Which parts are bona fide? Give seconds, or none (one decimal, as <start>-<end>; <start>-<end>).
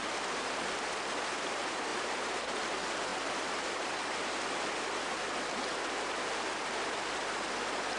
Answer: 0.0-8.0